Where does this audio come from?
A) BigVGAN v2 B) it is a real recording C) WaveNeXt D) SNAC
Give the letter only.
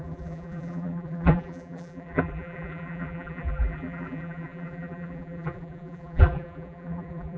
A